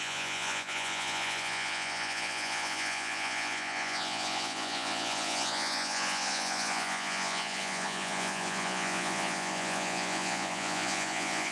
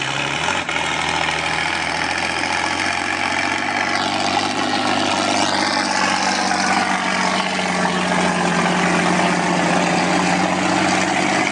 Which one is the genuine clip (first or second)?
second